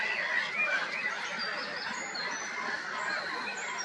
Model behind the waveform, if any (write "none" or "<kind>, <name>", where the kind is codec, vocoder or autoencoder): none